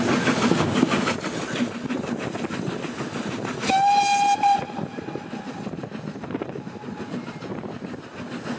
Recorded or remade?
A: recorded